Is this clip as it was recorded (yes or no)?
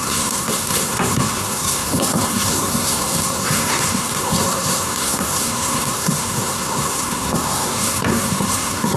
no